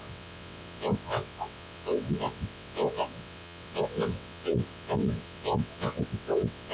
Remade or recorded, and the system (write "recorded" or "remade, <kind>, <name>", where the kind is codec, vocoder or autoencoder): remade, vocoder, WaveNeXt